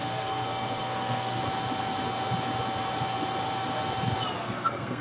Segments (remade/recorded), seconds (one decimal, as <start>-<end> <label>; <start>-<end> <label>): 0.0-1.4 remade; 1.4-4.4 recorded; 4.4-5.0 remade